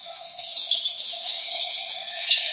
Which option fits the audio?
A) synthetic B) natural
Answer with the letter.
A